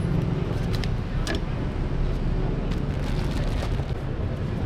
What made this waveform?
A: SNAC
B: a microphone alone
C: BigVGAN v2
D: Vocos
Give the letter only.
B